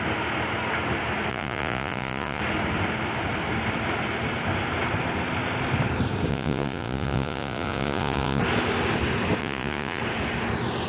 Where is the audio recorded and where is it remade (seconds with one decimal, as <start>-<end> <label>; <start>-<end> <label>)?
0.0-1.3 recorded; 1.3-2.4 remade; 2.4-6.3 recorded; 6.3-8.4 remade; 8.4-9.4 recorded; 9.4-10.0 remade; 10.0-10.9 recorded